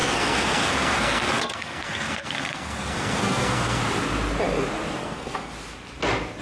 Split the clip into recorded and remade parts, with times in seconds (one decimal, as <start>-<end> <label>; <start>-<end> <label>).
0.0-3.8 remade; 3.8-5.0 recorded; 5.0-5.5 remade; 5.5-6.4 recorded